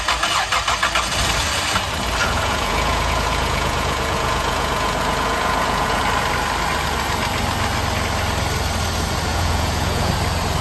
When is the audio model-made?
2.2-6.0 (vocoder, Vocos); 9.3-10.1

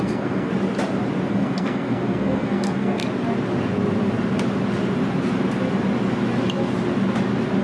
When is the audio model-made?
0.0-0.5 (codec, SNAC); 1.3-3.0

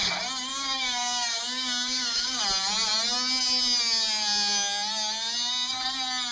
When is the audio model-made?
0.5-2.4 (codec, DAC)

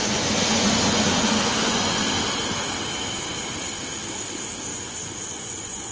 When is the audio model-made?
0.0-2.0 (vocoder, Vocos); 4.7-5.9